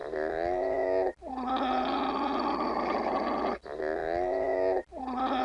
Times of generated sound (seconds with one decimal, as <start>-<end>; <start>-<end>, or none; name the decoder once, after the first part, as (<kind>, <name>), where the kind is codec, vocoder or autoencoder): none